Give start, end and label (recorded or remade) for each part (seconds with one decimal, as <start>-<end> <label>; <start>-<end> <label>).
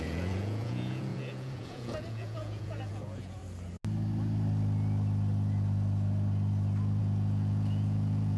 0.0-3.4 remade; 3.4-7.0 recorded; 7.0-8.4 remade